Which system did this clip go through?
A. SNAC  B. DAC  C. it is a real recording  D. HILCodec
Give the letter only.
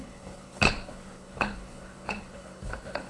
D